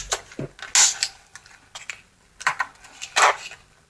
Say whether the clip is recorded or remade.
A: recorded